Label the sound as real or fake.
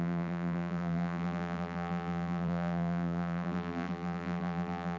fake